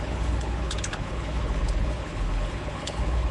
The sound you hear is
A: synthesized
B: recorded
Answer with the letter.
A